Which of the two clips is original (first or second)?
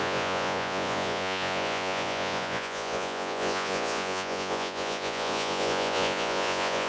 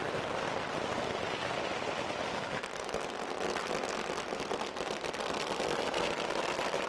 second